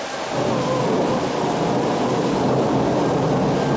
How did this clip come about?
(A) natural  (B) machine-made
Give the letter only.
A